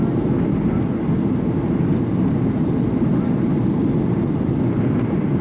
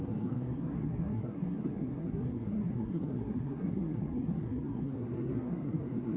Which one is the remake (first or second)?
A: second